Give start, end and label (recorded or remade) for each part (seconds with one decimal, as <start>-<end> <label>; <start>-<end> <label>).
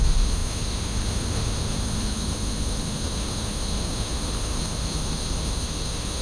0.0-6.2 remade